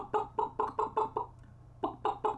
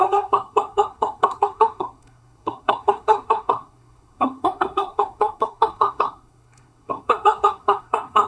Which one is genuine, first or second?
first